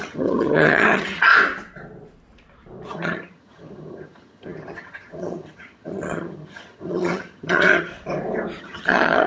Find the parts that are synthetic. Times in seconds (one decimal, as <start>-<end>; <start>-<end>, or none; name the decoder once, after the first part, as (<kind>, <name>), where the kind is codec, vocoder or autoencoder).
0.0-1.3 (vocoder, HiFi-GAN); 2.9-7.9; 8.6-9.3